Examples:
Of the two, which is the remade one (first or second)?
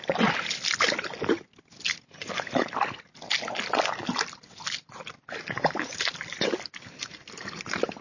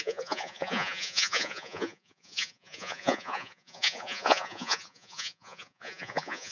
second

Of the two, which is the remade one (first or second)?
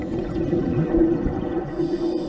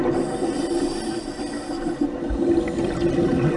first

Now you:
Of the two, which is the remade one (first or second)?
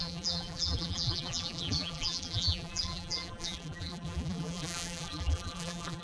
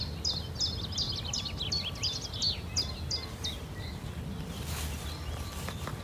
first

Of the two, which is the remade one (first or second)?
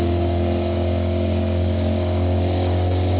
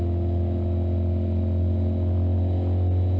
first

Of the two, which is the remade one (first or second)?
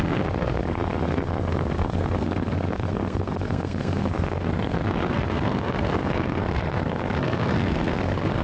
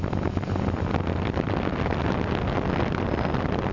first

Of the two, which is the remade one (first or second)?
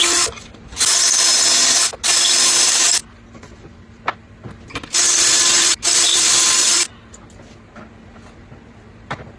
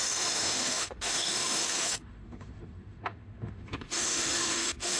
second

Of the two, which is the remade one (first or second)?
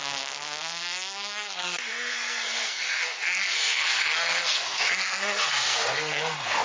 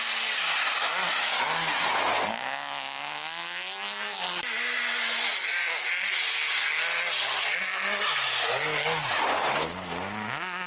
first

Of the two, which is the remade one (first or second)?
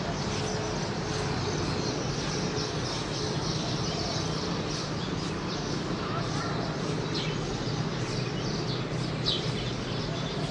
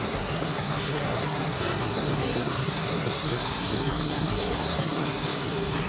second